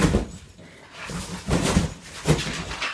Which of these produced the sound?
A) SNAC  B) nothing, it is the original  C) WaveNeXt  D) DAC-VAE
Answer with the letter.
B